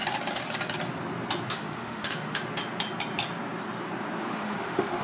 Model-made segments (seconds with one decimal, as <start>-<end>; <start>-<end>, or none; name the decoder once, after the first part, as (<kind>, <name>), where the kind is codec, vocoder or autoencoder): 1.5-2.4 (autoencoder, DAC-VAE); 4.2-5.0